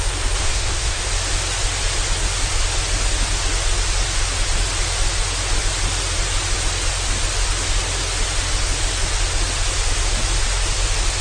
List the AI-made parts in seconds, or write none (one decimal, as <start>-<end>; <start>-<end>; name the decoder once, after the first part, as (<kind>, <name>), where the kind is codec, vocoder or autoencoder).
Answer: 0.4-1.1 (codec, SNAC)